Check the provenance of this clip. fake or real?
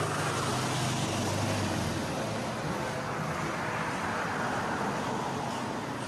real